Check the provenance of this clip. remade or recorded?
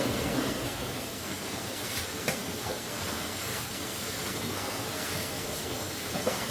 remade